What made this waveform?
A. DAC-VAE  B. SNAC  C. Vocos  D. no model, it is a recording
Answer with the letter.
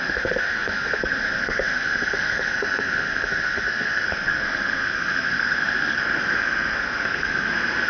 B